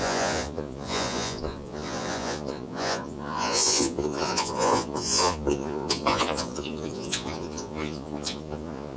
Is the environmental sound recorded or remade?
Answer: remade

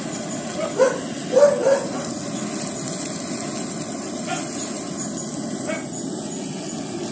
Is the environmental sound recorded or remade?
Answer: recorded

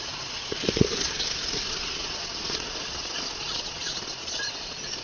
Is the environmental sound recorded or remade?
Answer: remade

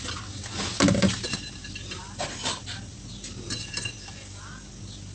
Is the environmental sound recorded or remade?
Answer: recorded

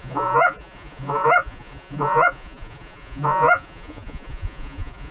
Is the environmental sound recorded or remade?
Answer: remade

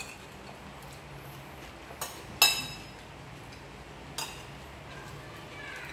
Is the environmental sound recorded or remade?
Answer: recorded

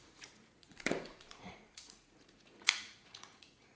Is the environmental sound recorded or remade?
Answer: remade